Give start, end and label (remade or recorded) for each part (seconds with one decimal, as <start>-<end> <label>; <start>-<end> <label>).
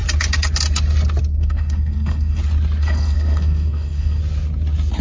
0.0-1.3 recorded; 1.3-2.4 remade; 2.4-2.8 recorded; 2.8-4.2 remade; 4.2-5.0 recorded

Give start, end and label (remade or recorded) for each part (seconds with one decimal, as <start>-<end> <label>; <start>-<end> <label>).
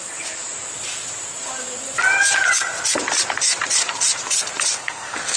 0.0-4.7 recorded; 4.7-5.4 remade